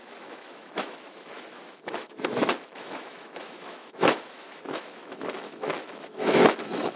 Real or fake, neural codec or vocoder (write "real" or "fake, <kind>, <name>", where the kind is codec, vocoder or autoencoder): fake, autoencoder, DAC-VAE